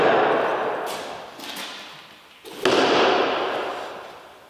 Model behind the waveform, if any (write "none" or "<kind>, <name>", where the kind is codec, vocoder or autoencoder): none